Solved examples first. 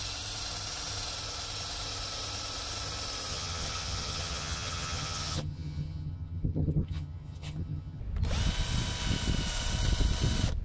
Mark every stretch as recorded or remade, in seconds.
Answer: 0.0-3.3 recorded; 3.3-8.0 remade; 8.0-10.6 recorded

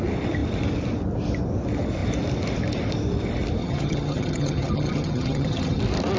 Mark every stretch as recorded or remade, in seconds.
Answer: 0.0-3.6 recorded; 3.6-5.8 remade; 5.8-6.2 recorded

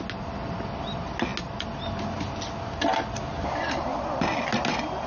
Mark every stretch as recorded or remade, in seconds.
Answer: 0.0-5.1 recorded

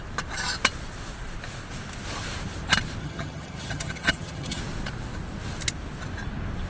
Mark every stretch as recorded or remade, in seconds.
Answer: 0.0-3.0 recorded; 3.0-4.6 remade; 4.6-6.7 recorded

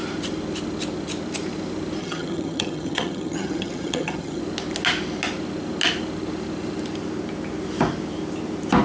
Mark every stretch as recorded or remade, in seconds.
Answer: 0.0-2.0 recorded; 2.0-4.4 remade; 4.4-8.8 recorded

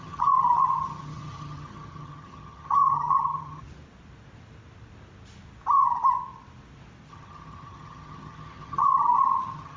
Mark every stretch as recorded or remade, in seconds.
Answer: 0.0-3.6 remade; 3.6-7.1 recorded; 7.1-9.8 remade

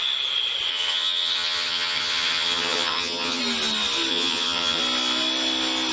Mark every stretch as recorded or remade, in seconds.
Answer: 0.0-0.7 recorded; 0.7-3.4 remade; 3.4-4.1 recorded; 4.1-4.8 remade; 4.8-5.9 recorded

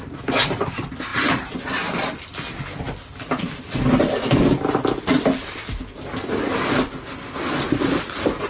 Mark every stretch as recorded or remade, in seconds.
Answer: 0.0-8.5 recorded